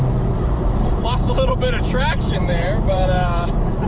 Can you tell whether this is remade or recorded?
remade